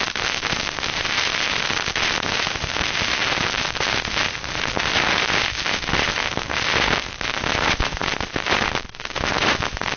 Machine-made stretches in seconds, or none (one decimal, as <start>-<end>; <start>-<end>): none